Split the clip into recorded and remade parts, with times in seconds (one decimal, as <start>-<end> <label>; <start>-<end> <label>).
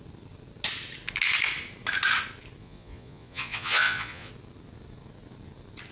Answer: 0.0-2.6 recorded; 2.6-4.3 remade; 4.3-5.9 recorded